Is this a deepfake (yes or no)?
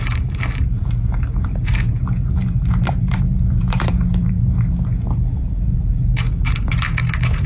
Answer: yes